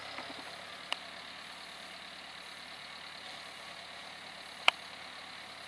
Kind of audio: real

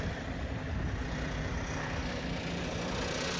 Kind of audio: real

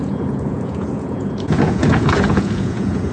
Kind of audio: fake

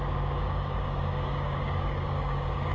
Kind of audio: fake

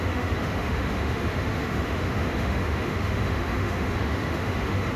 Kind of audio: fake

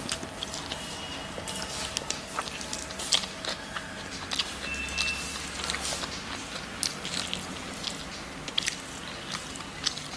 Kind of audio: real